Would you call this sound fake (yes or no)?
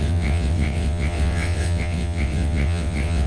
yes